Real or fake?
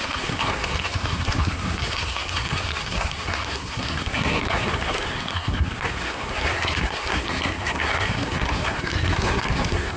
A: fake